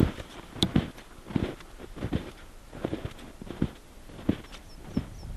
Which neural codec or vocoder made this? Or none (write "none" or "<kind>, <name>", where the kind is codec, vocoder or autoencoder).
none